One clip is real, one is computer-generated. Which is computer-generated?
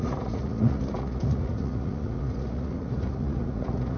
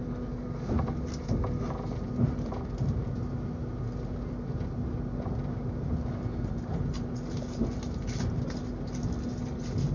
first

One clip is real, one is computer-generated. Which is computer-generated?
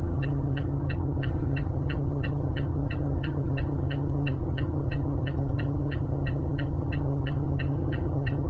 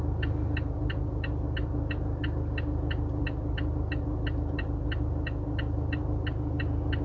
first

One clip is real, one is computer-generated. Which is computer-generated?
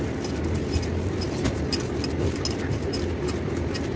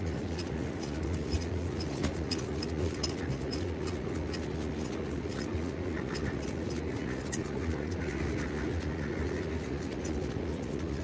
second